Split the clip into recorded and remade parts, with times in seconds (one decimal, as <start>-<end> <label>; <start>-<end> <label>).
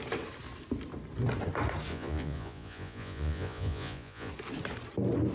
0.0-1.9 recorded; 1.9-4.3 remade; 4.3-5.3 recorded